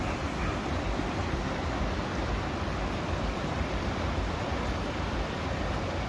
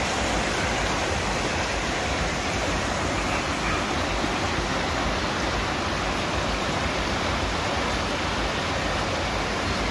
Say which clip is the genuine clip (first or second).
second